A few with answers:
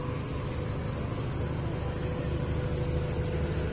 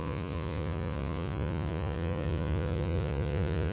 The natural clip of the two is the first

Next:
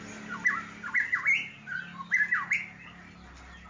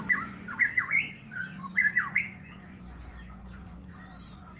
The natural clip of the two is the first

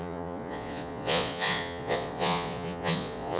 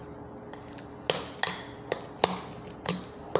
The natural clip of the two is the second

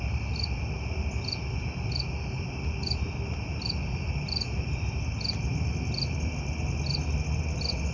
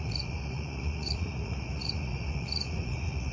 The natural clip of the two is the first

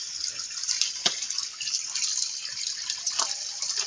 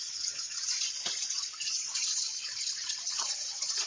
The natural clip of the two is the first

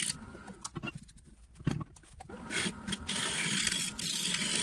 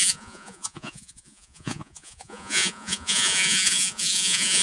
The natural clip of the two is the first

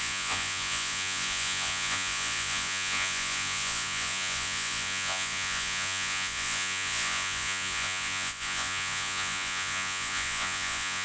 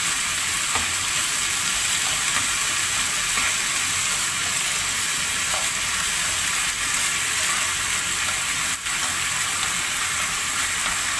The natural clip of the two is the second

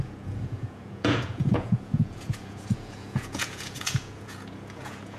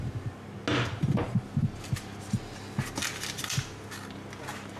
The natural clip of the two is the second